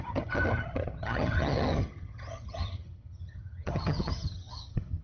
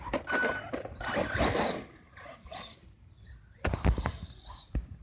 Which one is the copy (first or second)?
first